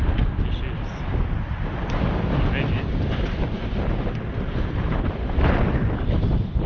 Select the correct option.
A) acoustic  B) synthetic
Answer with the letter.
A